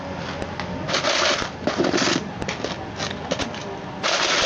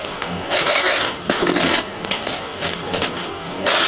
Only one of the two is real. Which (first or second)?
first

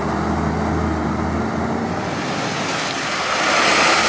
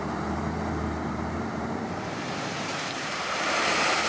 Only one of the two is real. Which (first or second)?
first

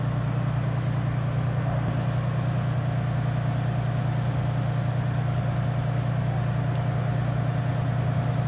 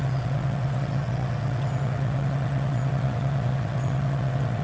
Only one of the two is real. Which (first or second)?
first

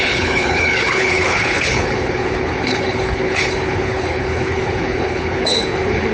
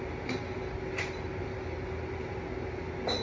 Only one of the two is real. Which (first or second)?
second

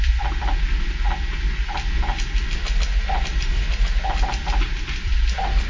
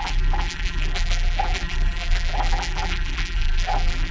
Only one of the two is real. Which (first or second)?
first